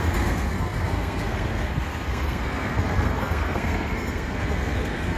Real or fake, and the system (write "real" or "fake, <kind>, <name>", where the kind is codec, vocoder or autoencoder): fake, codec, SNAC